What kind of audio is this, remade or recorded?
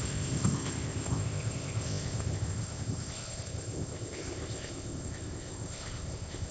remade